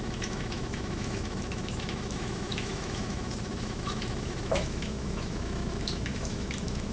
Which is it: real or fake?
fake